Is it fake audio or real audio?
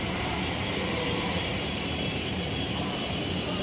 fake